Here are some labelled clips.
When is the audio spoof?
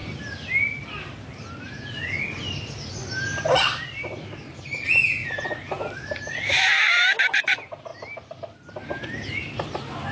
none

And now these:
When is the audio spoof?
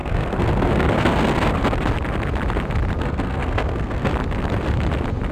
0.0-1.6 (codec, SNAC); 3.0-4.1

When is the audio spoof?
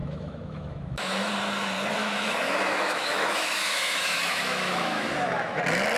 0.0-1.3 (autoencoder, DAC-VAE); 2.0-5.6